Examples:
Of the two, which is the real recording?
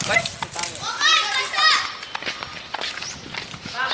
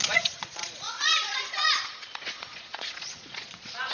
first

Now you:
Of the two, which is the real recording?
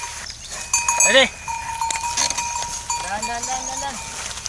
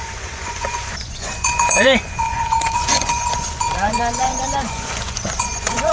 first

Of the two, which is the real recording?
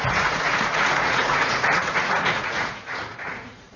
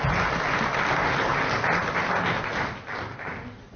second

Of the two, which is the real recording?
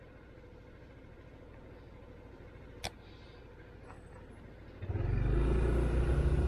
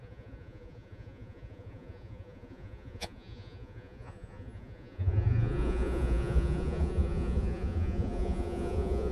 first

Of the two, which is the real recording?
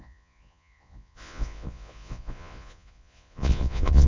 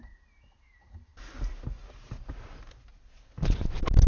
second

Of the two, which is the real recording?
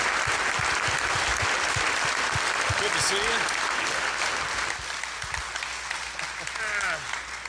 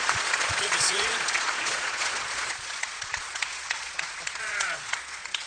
first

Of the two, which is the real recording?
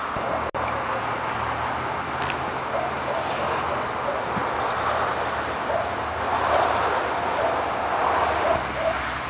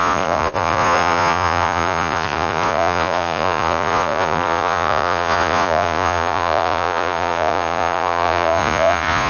first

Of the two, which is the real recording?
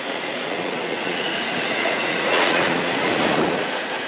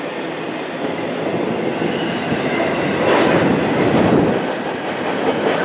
second